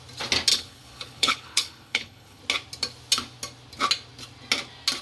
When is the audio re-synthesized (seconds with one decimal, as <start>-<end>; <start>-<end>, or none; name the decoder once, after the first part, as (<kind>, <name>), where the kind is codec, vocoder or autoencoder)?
0.5-2.4 (codec, HILCodec)